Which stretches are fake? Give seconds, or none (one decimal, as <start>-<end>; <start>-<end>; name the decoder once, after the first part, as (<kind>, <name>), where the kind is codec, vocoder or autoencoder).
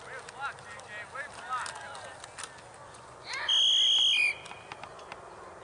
2.8-3.5 (vocoder, Vocos)